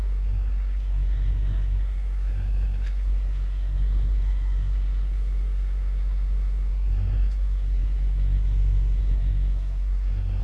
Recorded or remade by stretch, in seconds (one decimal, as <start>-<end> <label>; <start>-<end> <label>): 0.0-10.4 remade